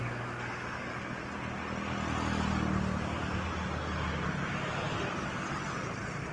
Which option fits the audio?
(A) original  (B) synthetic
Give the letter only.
A